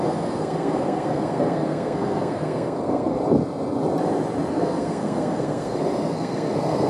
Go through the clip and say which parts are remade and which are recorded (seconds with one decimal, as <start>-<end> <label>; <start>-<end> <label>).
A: 0.0-3.2 remade; 3.2-4.5 recorded; 4.5-6.9 remade